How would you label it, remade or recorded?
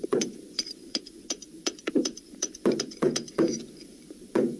remade